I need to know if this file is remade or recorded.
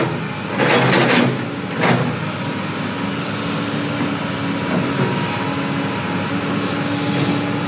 recorded